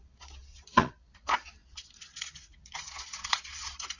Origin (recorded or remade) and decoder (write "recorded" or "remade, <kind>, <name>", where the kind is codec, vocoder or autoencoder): remade, vocoder, Vocos